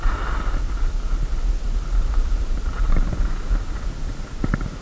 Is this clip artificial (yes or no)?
no